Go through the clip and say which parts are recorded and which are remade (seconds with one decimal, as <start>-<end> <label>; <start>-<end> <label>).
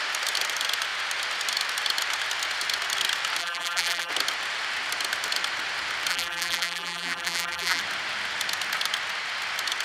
0.0-3.4 recorded; 3.4-4.1 remade; 4.1-6.1 recorded; 6.1-7.8 remade; 7.8-9.8 recorded